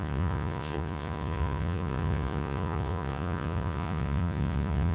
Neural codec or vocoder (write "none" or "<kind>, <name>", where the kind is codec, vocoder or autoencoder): vocoder, Vocos